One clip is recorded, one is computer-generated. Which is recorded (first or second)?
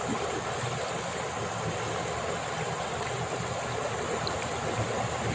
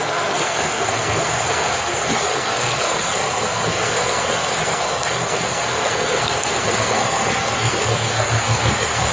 first